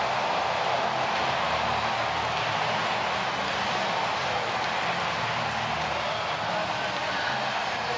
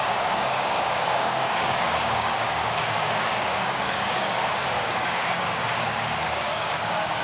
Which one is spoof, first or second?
second